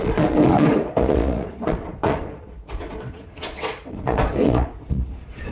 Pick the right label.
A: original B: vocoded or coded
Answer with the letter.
B